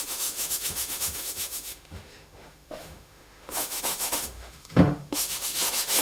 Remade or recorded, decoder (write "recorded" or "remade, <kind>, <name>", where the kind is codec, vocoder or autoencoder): remade, autoencoder, DAC-VAE